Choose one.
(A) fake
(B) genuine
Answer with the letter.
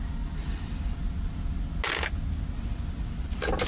B